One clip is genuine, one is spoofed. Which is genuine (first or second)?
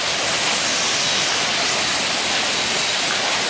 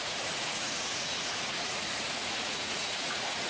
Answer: first